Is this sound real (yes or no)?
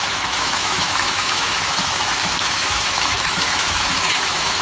no